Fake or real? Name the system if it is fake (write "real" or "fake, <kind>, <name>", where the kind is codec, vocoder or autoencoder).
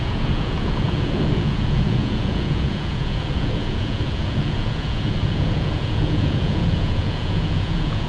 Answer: fake, vocoder, Vocos